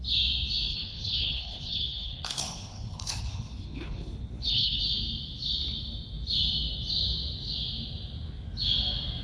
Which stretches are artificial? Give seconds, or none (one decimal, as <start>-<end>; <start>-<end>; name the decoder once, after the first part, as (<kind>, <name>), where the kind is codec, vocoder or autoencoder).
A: 0.7-4.8 (codec, HILCodec)